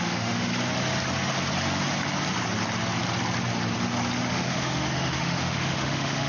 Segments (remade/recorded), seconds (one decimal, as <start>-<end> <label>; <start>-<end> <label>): 0.0-0.5 remade; 0.5-4.3 recorded; 4.3-6.3 remade